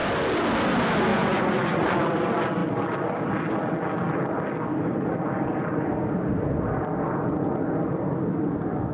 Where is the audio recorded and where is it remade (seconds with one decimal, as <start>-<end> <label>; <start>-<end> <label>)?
0.0-1.1 recorded; 1.1-2.0 remade; 2.0-8.9 recorded